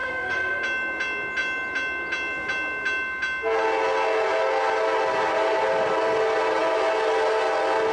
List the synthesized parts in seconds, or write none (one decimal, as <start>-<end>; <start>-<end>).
0.0-0.6